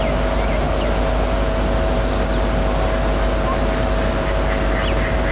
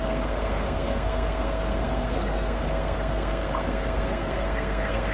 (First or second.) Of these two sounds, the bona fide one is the first